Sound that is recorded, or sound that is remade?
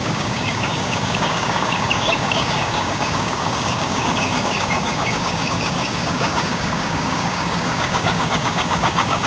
remade